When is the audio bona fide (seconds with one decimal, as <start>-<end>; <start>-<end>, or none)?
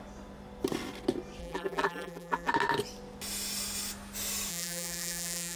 0.0-1.4; 2.5-4.5